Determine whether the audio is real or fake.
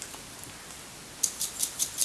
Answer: real